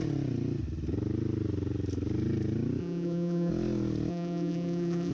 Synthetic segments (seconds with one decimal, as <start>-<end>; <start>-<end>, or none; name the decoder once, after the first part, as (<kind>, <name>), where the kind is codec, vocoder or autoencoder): 2.8-3.5 (vocoder, BigVGAN v2); 4.1-5.1